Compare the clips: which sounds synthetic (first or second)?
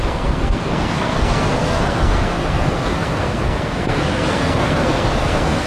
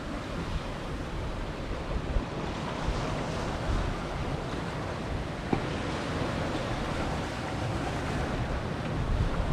first